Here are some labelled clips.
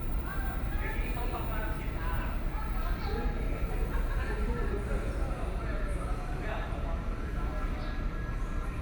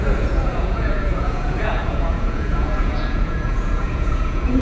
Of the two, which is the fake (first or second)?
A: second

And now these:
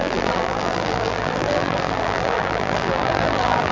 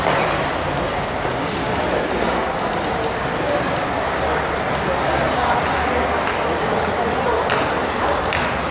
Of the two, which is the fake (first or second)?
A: first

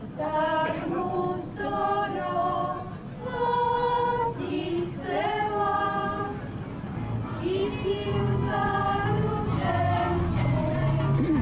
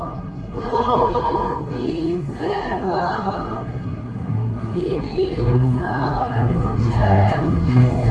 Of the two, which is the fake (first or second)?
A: second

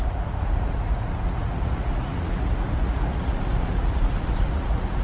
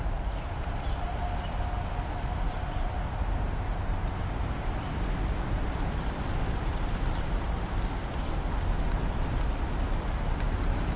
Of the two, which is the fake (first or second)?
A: first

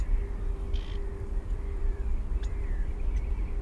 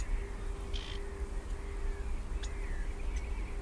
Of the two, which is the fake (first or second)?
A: first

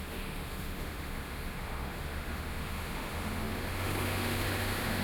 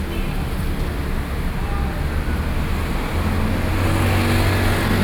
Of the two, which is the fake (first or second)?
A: first